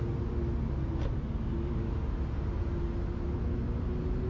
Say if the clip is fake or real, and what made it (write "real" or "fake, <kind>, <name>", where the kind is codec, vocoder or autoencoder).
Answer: real